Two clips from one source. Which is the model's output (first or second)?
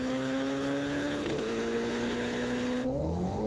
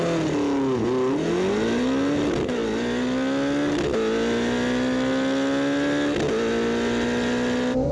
first